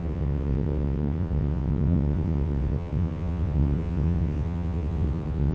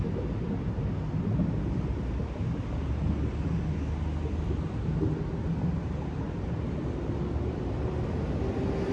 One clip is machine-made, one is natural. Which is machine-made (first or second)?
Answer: first